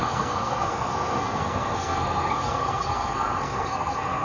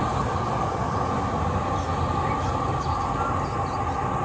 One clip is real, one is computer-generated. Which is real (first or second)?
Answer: second